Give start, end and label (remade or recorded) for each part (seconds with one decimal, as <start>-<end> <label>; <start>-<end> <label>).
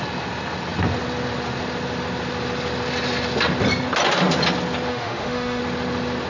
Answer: 0.0-4.9 recorded; 4.9-5.6 remade; 5.6-6.3 recorded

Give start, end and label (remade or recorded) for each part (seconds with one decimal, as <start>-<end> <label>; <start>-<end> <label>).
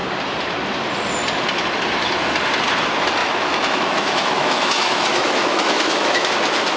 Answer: 0.0-3.2 recorded; 3.2-6.3 remade; 6.3-6.8 recorded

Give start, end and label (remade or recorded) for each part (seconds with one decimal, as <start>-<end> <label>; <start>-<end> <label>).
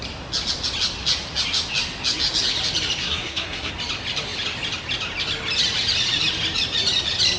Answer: 0.0-3.0 recorded; 3.0-3.7 remade; 3.7-7.4 recorded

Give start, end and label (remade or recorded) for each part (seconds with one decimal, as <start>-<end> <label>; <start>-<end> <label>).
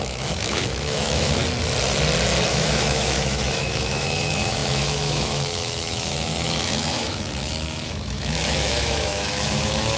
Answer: 0.0-1.4 remade; 1.4-2.5 recorded; 2.5-10.0 remade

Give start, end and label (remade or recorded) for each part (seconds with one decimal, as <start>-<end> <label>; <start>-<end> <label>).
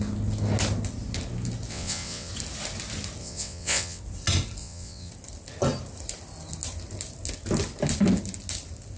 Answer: 0.0-1.7 recorded; 1.7-2.3 remade; 2.3-3.2 recorded; 3.2-4.0 remade; 4.0-4.6 recorded; 4.6-5.1 remade; 5.1-9.0 recorded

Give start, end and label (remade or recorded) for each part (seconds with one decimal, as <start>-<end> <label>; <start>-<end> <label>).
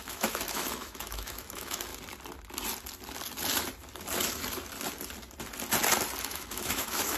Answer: 0.0-1.9 remade; 1.9-6.2 recorded; 6.2-7.2 remade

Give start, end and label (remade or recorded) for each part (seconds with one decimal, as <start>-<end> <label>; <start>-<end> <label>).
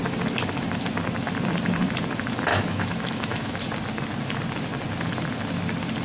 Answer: 0.0-2.5 recorded; 2.5-3.6 remade; 3.6-6.0 recorded